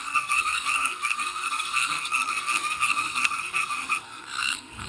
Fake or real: fake